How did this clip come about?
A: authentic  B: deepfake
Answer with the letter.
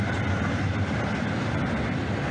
A